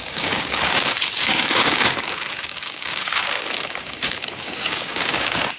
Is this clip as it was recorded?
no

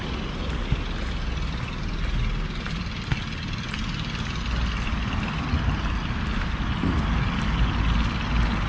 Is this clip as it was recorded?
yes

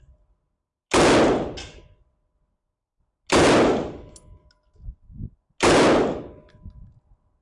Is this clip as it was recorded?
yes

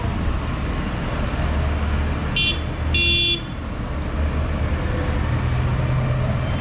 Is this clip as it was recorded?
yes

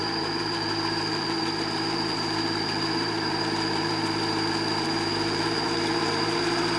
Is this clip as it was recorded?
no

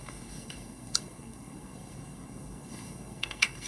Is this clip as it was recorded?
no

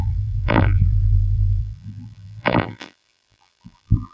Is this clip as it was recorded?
no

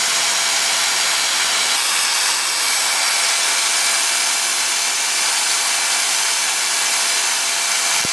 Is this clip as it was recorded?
yes